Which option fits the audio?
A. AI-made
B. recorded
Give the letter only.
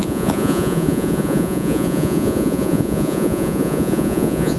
A